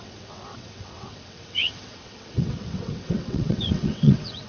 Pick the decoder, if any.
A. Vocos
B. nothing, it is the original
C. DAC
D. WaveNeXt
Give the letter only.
D